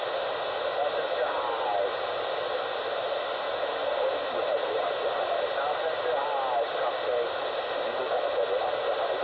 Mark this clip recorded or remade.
recorded